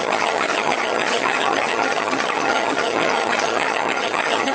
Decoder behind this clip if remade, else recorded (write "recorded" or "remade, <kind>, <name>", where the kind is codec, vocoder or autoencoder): remade, vocoder, HiFi-GAN